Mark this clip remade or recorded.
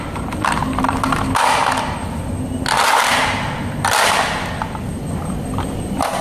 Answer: recorded